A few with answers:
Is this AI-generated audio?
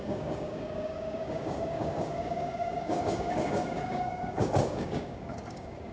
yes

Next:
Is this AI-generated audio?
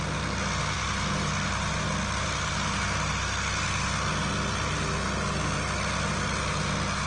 no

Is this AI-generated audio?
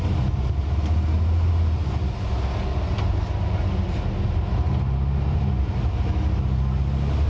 no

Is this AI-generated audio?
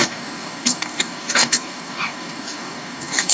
yes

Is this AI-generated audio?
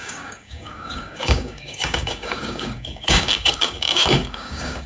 yes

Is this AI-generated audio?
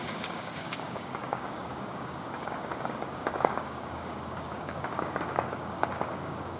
yes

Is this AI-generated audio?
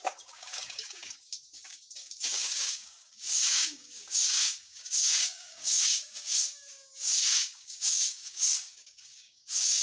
yes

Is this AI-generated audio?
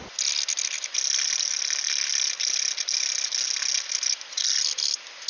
no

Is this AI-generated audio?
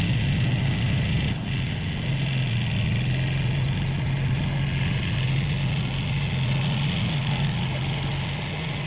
no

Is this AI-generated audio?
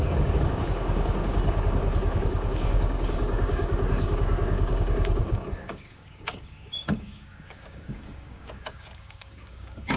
yes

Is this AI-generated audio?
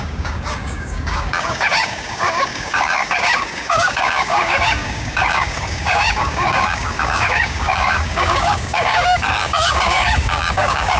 yes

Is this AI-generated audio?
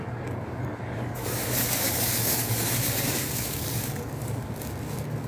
yes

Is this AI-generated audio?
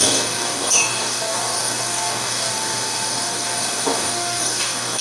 yes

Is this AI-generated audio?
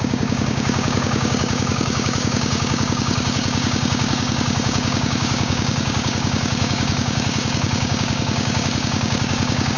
yes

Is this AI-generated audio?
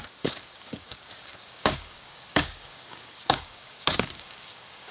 yes